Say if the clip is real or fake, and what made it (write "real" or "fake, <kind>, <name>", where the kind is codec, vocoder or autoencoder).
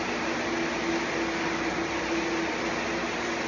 real